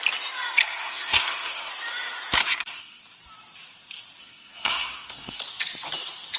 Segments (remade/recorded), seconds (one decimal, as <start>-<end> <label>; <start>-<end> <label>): 0.0-0.6 recorded; 0.6-1.7 remade; 1.7-2.4 recorded; 2.4-3.0 remade; 3.0-4.2 recorded; 4.2-5.4 remade; 5.4-6.4 recorded